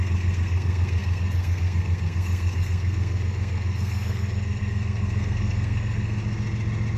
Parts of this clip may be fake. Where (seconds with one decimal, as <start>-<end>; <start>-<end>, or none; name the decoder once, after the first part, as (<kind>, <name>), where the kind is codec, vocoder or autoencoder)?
0.0-6.2 (codec, SNAC)